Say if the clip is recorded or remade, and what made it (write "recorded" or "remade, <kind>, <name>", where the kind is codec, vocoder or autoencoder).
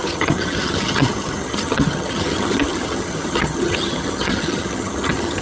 remade, vocoder, HiFi-GAN